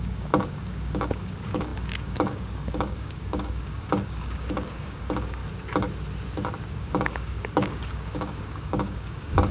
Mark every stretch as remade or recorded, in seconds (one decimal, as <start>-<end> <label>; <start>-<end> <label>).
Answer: 0.0-5.4 remade; 5.4-6.7 recorded; 6.7-9.5 remade